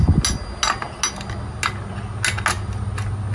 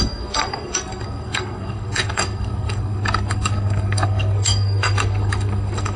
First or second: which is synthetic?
second